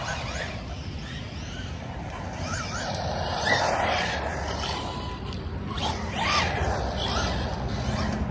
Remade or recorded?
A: recorded